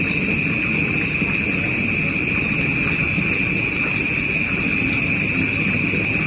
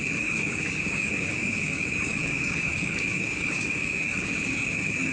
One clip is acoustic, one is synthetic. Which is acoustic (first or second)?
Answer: first